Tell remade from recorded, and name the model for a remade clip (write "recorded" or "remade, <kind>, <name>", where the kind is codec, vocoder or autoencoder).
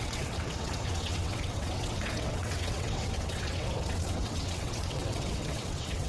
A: remade, vocoder, WaveNeXt